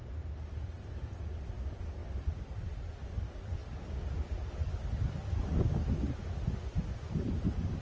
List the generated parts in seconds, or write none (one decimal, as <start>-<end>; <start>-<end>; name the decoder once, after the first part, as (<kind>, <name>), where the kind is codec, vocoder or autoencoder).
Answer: none